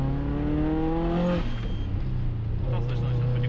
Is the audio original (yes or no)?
yes